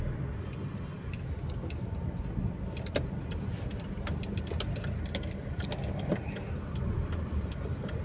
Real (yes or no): yes